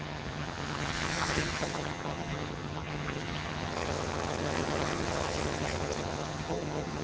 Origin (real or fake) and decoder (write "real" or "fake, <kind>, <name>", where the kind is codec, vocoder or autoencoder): fake, vocoder, HiFi-GAN